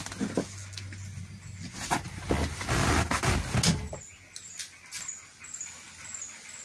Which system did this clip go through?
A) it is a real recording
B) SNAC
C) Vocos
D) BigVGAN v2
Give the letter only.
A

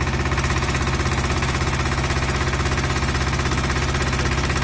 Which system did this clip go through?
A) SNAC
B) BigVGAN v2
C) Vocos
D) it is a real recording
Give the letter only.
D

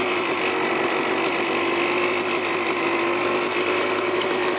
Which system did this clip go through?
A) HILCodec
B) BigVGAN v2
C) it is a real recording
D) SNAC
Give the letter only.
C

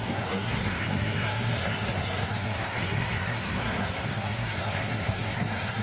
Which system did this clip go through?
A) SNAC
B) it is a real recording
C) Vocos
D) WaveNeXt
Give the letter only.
A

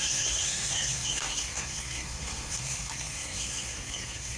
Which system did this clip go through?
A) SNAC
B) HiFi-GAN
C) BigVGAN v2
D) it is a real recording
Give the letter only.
A